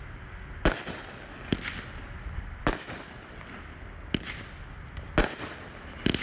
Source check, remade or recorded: recorded